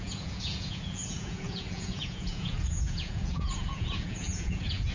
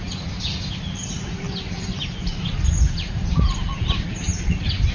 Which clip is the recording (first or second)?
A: second